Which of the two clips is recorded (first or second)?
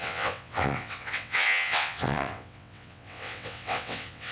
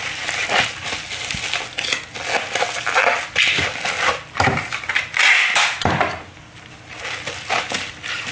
second